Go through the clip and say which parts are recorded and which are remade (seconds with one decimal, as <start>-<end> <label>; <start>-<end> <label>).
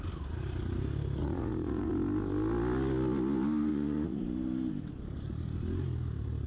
0.0-1.2 recorded; 1.2-1.9 remade; 1.9-3.7 recorded; 3.7-4.2 remade; 4.2-6.5 recorded